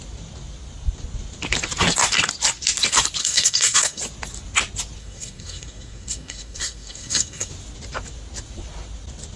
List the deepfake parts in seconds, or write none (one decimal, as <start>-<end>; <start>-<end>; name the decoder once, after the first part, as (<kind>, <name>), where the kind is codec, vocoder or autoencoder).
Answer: 3.2-4.0 (codec, SNAC); 5.0-7.5